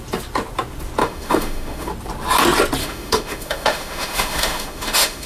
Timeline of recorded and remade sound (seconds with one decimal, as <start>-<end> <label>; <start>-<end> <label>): 0.0-1.0 recorded; 1.0-1.9 remade; 1.9-2.8 recorded; 2.8-5.3 remade